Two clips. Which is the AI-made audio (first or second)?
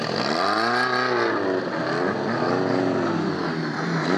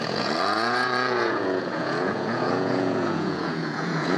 second